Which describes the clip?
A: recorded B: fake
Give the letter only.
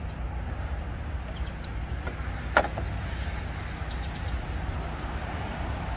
A